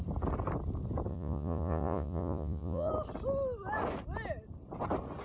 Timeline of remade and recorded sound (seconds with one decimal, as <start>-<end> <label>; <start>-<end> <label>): 0.0-1.1 recorded; 1.1-2.9 remade; 2.9-5.2 recorded